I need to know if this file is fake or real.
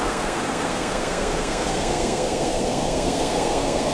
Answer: fake